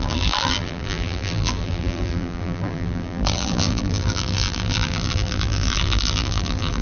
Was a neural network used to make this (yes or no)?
yes